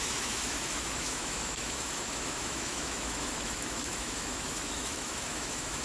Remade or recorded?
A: remade